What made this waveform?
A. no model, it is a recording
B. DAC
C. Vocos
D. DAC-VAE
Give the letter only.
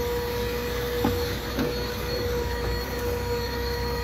B